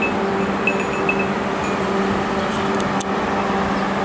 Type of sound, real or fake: real